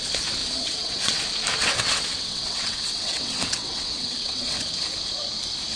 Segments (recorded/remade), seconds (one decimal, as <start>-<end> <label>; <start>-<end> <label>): 0.0-0.4 recorded; 0.4-1.2 remade; 1.2-1.6 recorded; 1.6-4.7 remade; 4.7-5.8 recorded